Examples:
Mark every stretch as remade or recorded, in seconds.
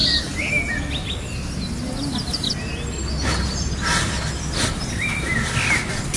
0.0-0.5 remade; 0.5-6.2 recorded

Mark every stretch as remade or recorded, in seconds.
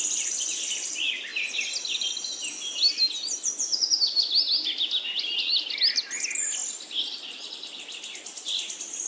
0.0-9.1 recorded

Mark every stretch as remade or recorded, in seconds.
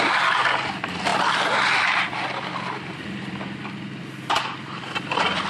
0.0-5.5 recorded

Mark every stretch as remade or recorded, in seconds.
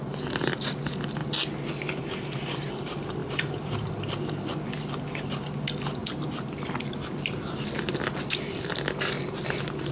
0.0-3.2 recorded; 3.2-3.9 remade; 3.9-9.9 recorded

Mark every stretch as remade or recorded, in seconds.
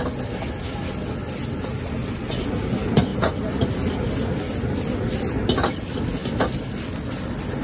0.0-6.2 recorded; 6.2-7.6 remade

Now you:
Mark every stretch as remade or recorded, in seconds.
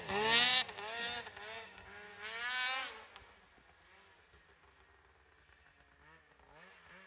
0.0-7.1 recorded